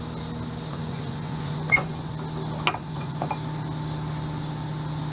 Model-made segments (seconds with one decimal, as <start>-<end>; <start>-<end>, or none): 0.7-2.1; 2.8-3.3